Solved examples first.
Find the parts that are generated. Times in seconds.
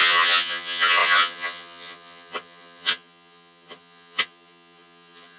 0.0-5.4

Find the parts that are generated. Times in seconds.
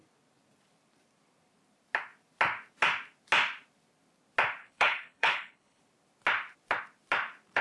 4.6-5.8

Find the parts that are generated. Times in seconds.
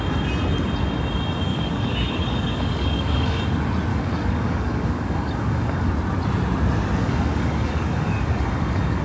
1.5-3.4; 3.9-5.9; 7.0-9.0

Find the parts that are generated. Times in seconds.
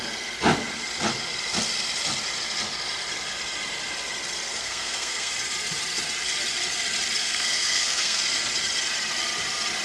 4.6-5.3; 7.2-8.2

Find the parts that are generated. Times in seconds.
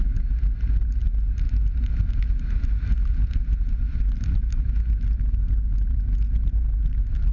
none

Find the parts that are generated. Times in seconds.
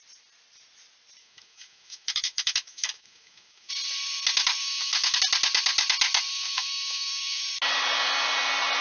1.2-3.7; 4.6-5.2; 6.3-7.4